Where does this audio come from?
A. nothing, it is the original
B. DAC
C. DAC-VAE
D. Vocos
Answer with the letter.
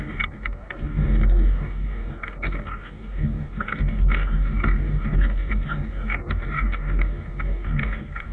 B